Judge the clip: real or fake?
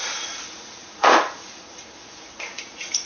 fake